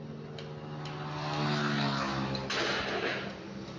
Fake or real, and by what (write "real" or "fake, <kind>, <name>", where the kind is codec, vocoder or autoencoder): real